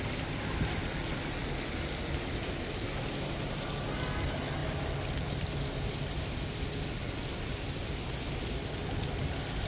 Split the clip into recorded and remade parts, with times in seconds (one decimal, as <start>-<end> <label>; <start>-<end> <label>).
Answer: 0.0-9.7 recorded